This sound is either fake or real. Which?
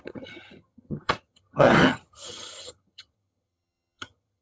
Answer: fake